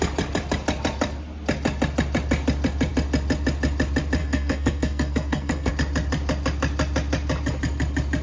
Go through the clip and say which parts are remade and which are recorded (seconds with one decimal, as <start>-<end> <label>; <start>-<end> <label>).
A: 0.0-4.2 recorded; 4.2-5.7 remade; 5.7-8.2 recorded